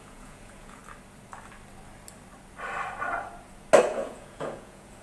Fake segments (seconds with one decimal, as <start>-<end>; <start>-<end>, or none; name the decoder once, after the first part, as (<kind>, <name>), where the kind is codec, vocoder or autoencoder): 0.0-0.8 (vocoder, Vocos); 3.8-5.0

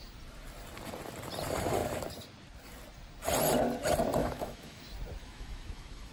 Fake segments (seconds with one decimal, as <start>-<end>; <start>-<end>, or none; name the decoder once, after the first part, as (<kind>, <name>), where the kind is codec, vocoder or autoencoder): 4.2-4.8 (autoencoder, DAC-VAE); 5.2-6.1

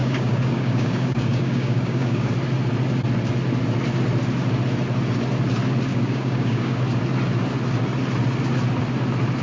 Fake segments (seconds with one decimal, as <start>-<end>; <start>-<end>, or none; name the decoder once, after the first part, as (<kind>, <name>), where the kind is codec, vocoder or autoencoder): 0.0-2.3 (codec, DAC); 5.9-6.8

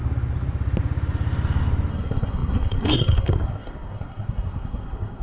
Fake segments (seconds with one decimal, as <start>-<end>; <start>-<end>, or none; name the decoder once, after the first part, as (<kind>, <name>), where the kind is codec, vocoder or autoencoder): 1.9-5.2 (codec, SNAC)

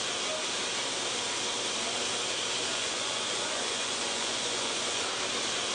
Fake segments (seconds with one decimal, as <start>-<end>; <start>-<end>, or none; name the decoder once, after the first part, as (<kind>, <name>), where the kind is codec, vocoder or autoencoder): 2.7-5.0 (vocoder, Vocos)

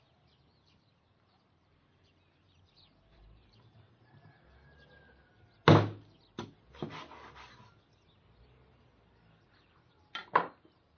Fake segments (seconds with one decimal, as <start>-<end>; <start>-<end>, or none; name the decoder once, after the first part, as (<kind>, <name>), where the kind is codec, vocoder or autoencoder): 0.0-5.3 (vocoder, BigVGAN v2); 9.4-11.0

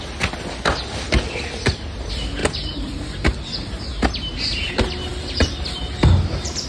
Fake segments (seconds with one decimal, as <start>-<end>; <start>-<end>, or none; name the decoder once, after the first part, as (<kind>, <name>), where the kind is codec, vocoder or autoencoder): none